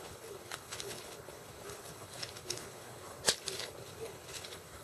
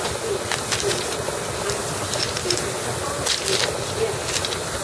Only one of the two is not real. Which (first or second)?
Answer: first